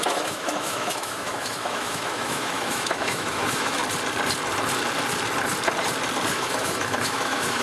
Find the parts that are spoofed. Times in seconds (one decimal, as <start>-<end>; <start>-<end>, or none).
0.0-3.8; 6.3-7.6